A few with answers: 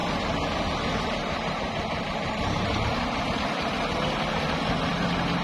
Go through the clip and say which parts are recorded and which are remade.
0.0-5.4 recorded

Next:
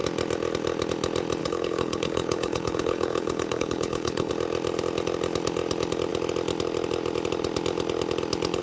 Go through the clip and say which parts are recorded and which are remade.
0.0-1.4 recorded; 1.4-4.3 remade; 4.3-8.6 recorded

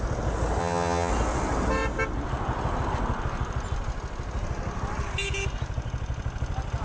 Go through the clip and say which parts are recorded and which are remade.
0.0-0.6 recorded; 0.6-1.1 remade; 1.1-6.8 recorded

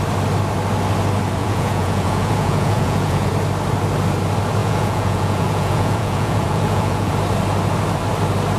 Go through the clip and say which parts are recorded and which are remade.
0.0-1.4 recorded; 1.4-3.3 remade; 3.3-4.6 recorded; 4.6-7.1 remade; 7.1-8.6 recorded

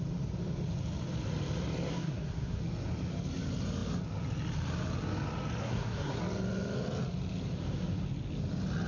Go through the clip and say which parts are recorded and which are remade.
0.0-1.9 recorded; 1.9-2.6 remade; 2.6-5.6 recorded; 5.6-6.2 remade; 6.2-8.9 recorded

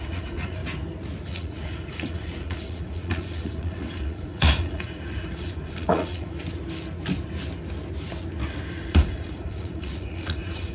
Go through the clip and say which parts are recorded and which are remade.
0.0-0.6 remade; 0.6-1.2 recorded; 1.2-6.4 remade; 6.4-8.8 recorded; 8.8-10.7 remade

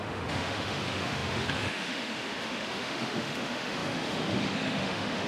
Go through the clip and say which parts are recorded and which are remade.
0.0-5.3 remade

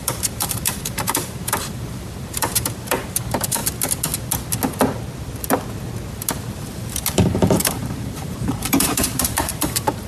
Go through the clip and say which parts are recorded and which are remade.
0.0-3.6 remade; 3.6-7.1 recorded; 7.1-10.1 remade